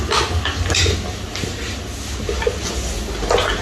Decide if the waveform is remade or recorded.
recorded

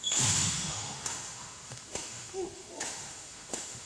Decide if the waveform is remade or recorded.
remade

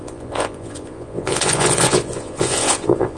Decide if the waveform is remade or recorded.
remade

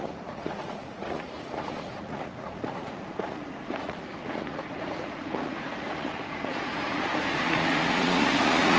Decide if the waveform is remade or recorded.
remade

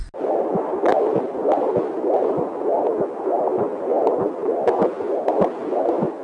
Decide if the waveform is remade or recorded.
recorded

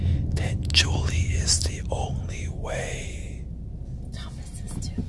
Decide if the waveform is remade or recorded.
recorded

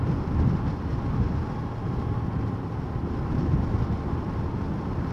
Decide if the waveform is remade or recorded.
recorded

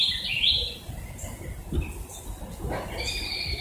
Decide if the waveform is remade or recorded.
recorded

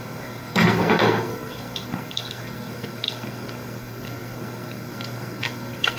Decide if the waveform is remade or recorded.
remade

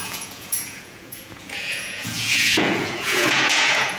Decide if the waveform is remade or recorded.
remade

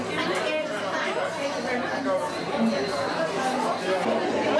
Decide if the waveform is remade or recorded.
recorded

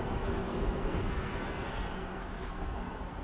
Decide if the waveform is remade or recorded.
remade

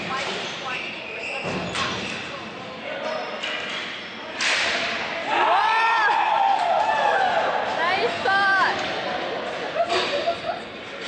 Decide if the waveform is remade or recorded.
recorded